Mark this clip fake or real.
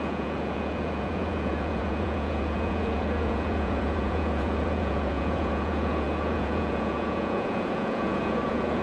fake